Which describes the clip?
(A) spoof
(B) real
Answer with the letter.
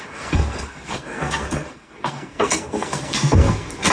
A